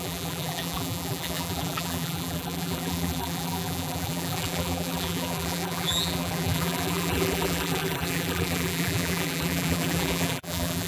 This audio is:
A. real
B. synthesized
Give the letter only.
B